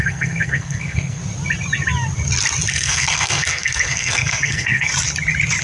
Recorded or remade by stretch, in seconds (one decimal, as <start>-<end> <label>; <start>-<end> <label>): 0.0-1.2 remade; 1.2-2.7 recorded; 2.7-4.9 remade; 4.9-5.6 recorded